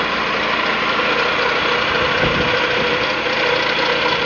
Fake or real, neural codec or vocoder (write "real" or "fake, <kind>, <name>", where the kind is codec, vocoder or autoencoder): real